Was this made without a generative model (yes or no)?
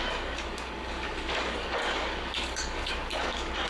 no